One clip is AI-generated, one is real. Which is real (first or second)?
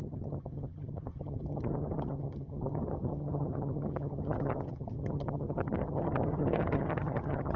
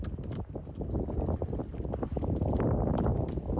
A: second